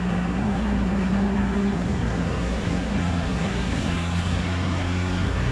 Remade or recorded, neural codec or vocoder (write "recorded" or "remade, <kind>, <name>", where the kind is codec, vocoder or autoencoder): remade, codec, SNAC